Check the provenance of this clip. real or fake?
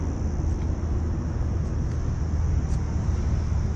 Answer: real